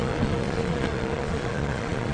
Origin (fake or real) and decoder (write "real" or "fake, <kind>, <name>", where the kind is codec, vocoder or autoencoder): fake, vocoder, Vocos